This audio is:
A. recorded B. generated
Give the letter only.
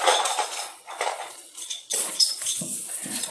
B